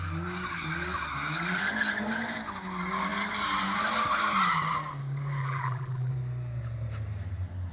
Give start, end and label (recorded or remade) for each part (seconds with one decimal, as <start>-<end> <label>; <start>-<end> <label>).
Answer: 0.0-5.4 recorded; 5.4-6.1 remade; 6.1-7.7 recorded